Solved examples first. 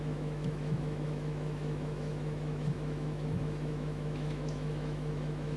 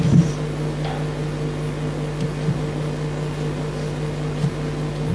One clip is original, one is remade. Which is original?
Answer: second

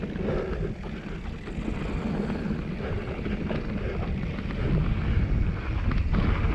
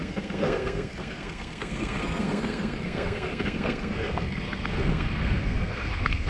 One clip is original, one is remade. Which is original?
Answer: first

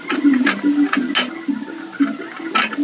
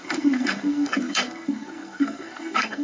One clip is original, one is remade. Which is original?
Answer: first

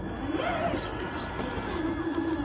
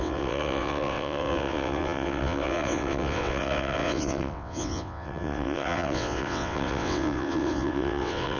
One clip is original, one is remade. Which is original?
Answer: first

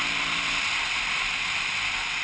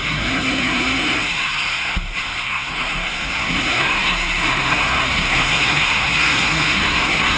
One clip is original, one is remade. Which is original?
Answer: first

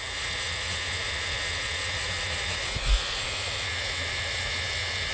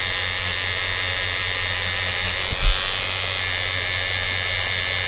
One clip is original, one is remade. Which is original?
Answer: second